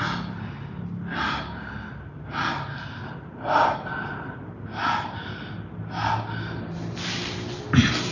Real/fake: real